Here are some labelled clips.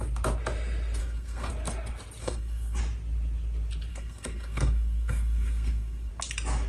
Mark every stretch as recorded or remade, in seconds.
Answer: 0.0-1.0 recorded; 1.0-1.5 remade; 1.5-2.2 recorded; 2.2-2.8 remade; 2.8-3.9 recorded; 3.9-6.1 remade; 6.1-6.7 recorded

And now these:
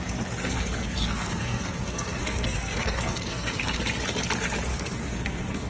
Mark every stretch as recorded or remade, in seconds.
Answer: 0.0-0.4 recorded; 0.4-3.8 remade; 3.8-4.7 recorded; 4.7-5.7 remade